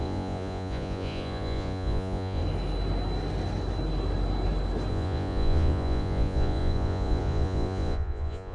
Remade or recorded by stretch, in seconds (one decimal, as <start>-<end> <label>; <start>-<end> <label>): 0.0-2.4 remade; 2.4-4.9 recorded; 4.9-8.5 remade